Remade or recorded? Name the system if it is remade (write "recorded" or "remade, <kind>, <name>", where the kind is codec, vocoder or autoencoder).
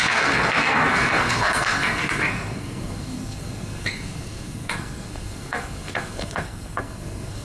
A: remade, codec, SNAC